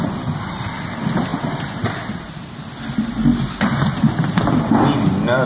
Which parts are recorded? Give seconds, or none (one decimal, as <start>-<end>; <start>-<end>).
0.0-5.5